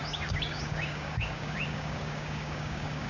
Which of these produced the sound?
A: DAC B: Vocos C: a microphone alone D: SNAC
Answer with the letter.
A